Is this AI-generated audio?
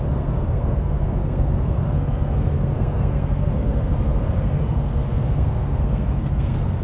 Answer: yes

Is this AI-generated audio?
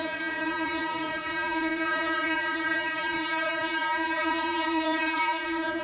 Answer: yes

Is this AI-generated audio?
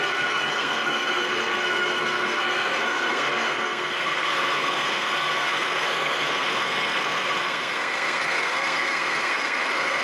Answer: yes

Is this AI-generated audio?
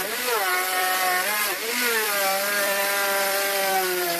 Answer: yes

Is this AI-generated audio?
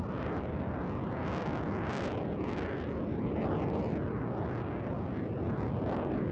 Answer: no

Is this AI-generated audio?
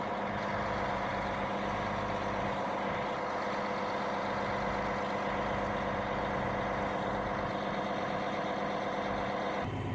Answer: no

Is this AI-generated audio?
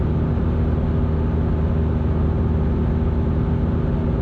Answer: no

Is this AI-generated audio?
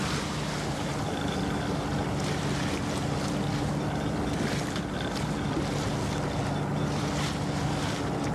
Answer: no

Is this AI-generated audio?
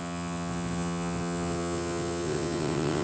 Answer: yes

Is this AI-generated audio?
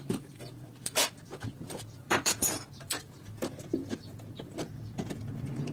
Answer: yes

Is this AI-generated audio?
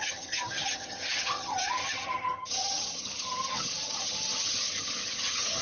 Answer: yes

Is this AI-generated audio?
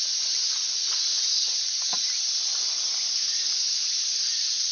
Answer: no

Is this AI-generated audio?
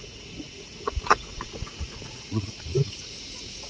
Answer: yes